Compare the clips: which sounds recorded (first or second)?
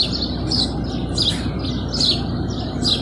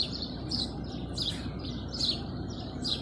first